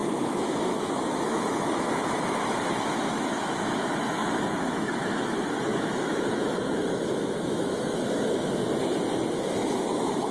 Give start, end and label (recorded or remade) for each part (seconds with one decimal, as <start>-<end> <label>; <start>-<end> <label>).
0.0-8.6 remade; 8.6-9.3 recorded; 9.3-10.3 remade